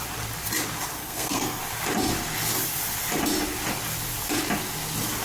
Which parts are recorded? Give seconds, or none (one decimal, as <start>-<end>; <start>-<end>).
0.0-1.0; 1.6-5.2